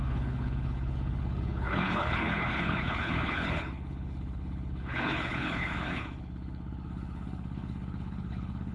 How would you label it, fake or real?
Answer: fake